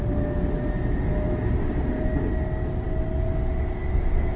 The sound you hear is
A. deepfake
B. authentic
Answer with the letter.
B